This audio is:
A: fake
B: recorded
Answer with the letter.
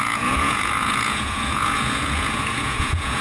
A